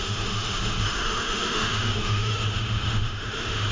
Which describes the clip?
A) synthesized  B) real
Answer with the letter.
A